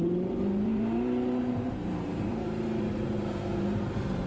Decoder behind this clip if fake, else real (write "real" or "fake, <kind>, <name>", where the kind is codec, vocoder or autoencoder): fake, vocoder, BigVGAN v2